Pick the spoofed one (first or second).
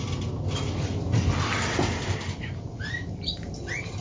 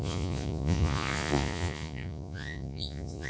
second